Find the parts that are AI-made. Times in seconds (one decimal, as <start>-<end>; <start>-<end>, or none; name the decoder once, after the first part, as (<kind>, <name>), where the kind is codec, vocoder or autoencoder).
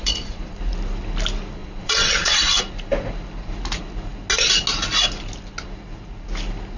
0.0-0.6 (vocoder, Vocos); 1.6-2.6